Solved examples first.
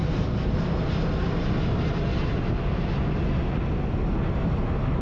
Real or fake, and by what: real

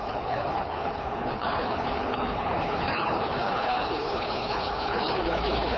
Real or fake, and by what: fake, codec, HILCodec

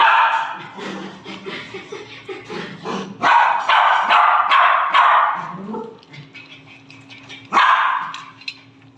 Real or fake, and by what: real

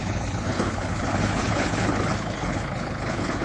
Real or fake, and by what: fake, codec, HILCodec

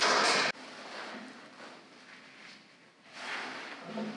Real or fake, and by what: real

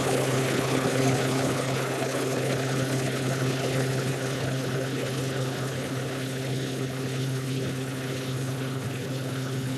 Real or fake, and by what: fake, codec, HILCodec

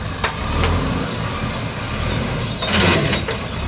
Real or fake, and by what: real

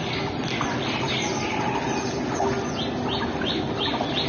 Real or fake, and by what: real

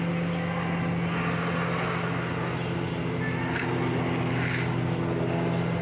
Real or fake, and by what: real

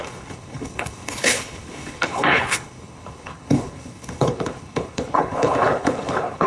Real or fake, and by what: fake, codec, HILCodec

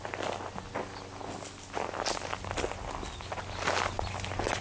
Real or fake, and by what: real